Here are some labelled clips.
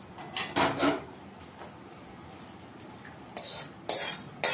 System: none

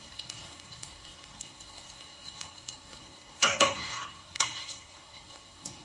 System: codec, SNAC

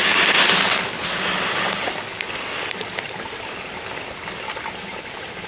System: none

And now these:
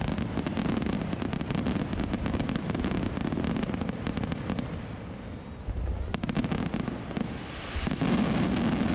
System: none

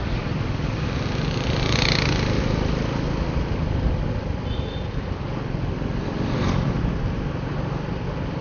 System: none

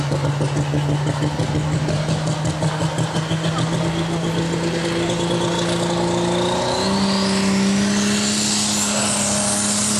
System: none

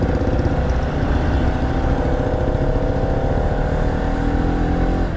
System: none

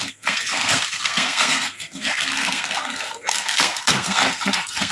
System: codec, SNAC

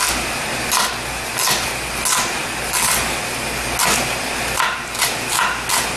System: none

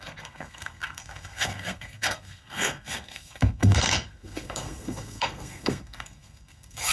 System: codec, SNAC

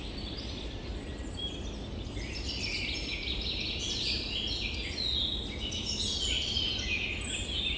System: none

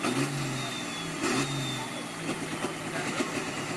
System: none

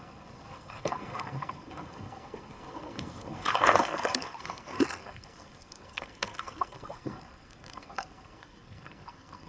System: codec, SNAC